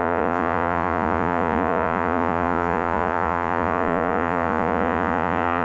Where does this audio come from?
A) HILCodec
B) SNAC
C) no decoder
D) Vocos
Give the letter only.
D